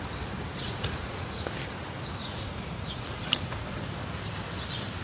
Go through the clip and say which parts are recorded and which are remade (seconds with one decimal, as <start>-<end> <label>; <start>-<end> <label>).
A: 0.0-0.6 recorded; 0.6-1.4 remade; 1.4-2.2 recorded; 2.2-3.8 remade; 3.8-5.0 recorded